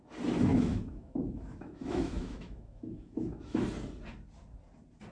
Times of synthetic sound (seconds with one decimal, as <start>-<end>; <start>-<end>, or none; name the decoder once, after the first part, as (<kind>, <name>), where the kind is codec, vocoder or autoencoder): 0.5-3.6 (autoencoder, DAC-VAE)